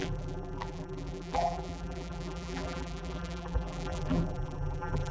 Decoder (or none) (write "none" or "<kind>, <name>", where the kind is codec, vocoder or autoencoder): vocoder, BigVGAN v2